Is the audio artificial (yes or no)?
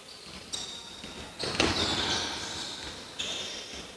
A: no